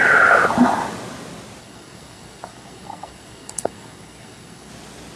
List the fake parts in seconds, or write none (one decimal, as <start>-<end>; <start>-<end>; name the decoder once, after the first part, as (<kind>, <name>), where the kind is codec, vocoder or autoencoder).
1.6-4.7 (codec, SNAC)